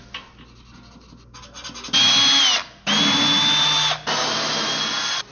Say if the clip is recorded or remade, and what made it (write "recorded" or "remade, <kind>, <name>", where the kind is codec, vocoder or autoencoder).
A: recorded